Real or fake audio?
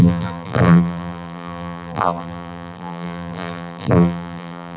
fake